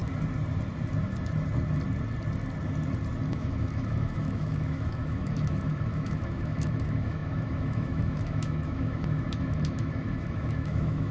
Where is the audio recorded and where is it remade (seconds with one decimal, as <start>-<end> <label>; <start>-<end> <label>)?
0.0-3.3 recorded; 3.3-11.1 remade